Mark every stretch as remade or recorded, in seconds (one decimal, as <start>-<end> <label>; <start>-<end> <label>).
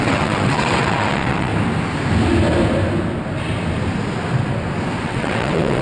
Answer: 0.0-1.5 remade; 1.5-5.0 recorded; 5.0-5.8 remade